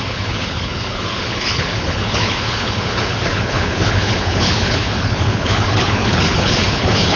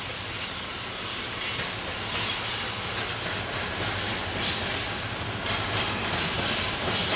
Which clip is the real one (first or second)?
second